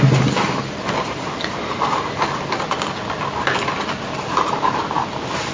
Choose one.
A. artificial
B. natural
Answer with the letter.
B